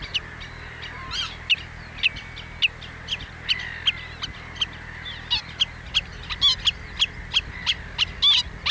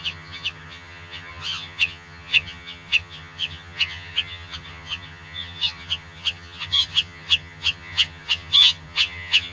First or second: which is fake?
second